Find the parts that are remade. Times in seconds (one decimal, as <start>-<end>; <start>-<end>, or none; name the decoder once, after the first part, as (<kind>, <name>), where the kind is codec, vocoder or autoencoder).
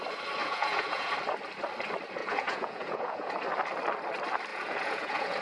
0.4-1.1 (vocoder, Vocos); 2.2-3.3; 4.5-5.4